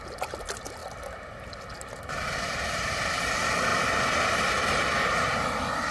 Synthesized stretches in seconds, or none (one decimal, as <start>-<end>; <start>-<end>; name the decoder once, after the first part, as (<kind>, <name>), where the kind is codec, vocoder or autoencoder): none